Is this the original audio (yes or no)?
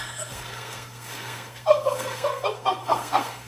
no